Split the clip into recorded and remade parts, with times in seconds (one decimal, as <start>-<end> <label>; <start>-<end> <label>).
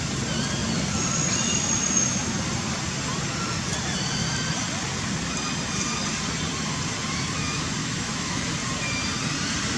0.0-7.8 recorded; 7.8-8.4 remade; 8.4-9.8 recorded